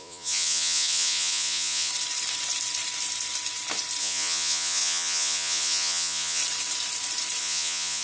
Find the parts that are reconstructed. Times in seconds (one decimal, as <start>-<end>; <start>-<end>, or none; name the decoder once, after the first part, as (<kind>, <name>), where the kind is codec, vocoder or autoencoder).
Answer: 0.0-1.9 (vocoder, Vocos); 4.0-6.4; 7.4-8.0